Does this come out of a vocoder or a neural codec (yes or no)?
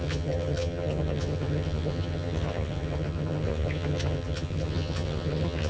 yes